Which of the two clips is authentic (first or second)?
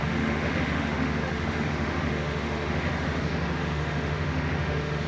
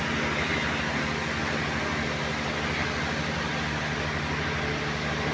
second